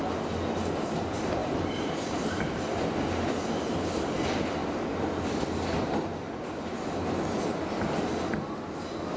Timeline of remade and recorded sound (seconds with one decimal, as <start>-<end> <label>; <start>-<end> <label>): 0.0-1.4 recorded; 1.4-2.9 remade; 2.9-4.6 recorded; 4.6-5.4 remade; 5.4-9.2 recorded